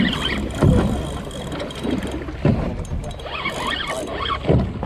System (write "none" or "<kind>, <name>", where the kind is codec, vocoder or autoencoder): none